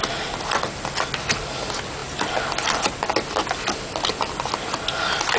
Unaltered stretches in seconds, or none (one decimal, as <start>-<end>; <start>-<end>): 0.0-5.4